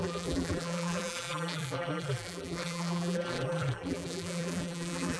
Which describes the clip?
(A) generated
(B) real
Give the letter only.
A